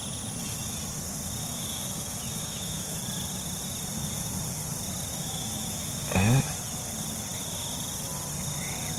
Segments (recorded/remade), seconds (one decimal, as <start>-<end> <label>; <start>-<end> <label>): 0.0-1.4 recorded; 1.4-3.0 remade; 3.0-5.1 recorded; 5.1-6.4 remade; 6.4-9.0 recorded